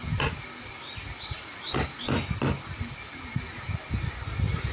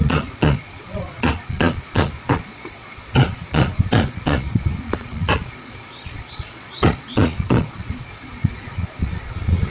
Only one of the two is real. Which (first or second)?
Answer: first